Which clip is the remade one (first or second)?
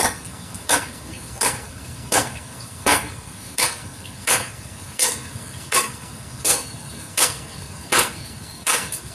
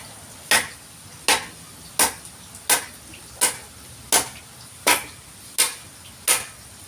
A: first